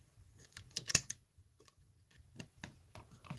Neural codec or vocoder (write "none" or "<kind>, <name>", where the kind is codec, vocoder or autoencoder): vocoder, Vocos